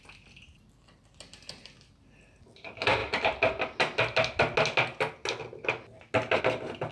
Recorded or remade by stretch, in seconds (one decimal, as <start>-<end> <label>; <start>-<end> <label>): 0.0-6.9 recorded